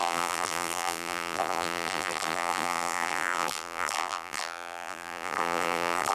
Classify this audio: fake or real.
fake